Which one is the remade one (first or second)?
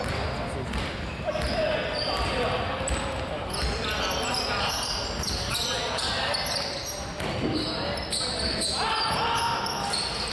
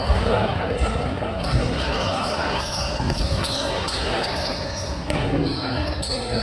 second